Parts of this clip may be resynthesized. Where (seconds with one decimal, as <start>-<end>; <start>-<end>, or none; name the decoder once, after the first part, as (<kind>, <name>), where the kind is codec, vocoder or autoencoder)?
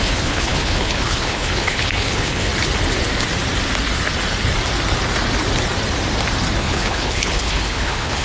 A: 0.0-2.5 (codec, HILCodec); 6.6-8.2